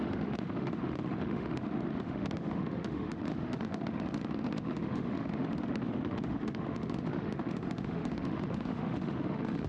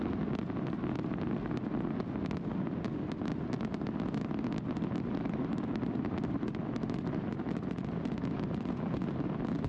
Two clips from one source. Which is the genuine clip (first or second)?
second